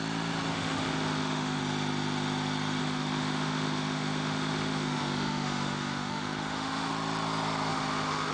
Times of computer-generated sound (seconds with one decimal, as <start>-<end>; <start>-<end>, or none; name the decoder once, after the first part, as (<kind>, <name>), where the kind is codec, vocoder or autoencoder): 0.5-1.6 (autoencoder, DAC-VAE); 2.8-6.9; 7.7-8.3